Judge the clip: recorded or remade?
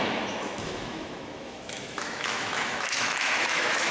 remade